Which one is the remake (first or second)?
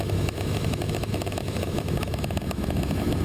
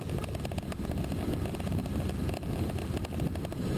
first